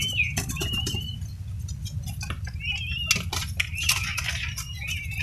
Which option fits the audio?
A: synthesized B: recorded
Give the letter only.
B